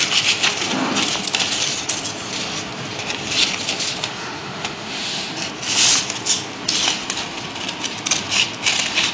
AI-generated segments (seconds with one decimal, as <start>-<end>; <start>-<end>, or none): 4.1-5.3